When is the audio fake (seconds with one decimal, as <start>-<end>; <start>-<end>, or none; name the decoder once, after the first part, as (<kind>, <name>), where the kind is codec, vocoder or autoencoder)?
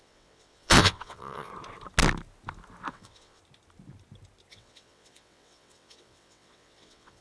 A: 0.0-1.5 (vocoder, WaveNeXt); 2.9-3.4; 4.5-7.2